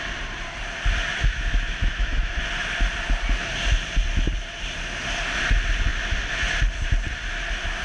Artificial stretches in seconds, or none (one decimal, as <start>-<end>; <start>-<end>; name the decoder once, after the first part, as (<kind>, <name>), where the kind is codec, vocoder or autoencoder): 1.1-2.4 (autoencoder, DAC-VAE)